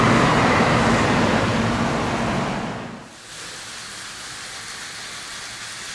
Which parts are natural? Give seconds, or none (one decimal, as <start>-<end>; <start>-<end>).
0.0-5.9